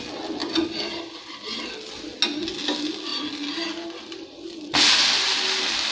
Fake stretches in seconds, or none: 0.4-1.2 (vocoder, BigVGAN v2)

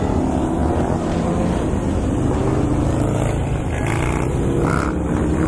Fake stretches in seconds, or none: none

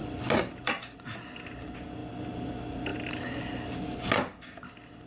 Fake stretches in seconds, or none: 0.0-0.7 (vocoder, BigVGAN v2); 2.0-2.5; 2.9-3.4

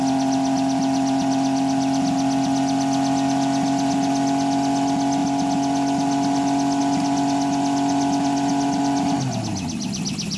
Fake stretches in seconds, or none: none

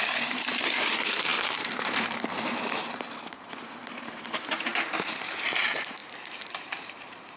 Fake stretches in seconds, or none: 0.0-7.4 (vocoder, BigVGAN v2)

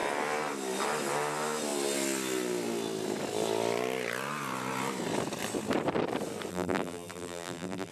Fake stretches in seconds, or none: 6.5-7.9 (vocoder, BigVGAN v2)

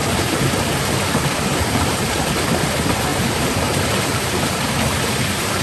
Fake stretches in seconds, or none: 0.0-2.3 (vocoder, BigVGAN v2); 3.1-5.6